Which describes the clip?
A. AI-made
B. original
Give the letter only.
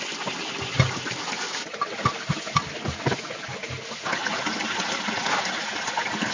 B